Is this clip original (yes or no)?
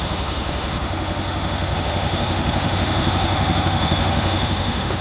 no